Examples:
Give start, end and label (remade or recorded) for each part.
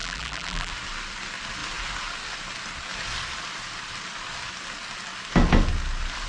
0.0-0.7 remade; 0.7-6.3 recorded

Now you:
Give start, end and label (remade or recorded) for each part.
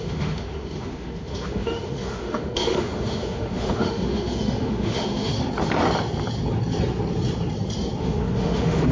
0.0-5.3 remade; 5.3-8.0 recorded; 8.0-8.9 remade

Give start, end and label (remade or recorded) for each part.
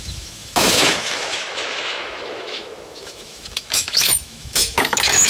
0.0-5.3 remade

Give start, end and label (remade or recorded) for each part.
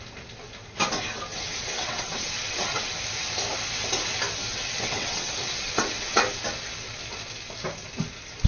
0.0-1.3 recorded; 1.3-2.9 remade; 2.9-4.5 recorded; 4.5-6.2 remade; 6.2-8.5 recorded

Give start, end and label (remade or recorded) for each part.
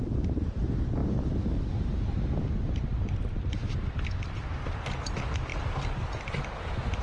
0.0-1.0 remade; 1.0-2.4 recorded; 2.4-5.5 remade; 5.5-6.4 recorded; 6.4-7.0 remade